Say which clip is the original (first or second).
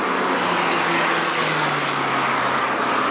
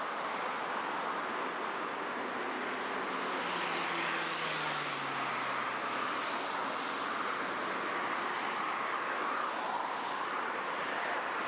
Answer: second